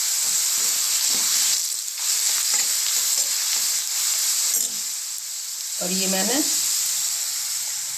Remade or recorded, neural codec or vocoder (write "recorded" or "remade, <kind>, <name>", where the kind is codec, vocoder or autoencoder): recorded